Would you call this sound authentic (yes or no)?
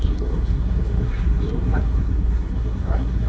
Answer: no